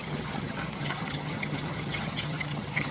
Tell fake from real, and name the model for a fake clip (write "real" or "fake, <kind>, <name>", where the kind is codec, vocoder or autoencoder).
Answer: fake, vocoder, HiFi-GAN